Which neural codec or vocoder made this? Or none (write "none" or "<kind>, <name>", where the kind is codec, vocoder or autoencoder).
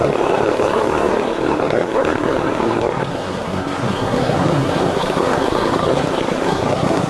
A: codec, SNAC